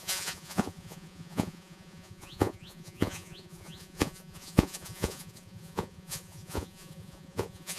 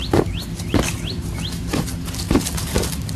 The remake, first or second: first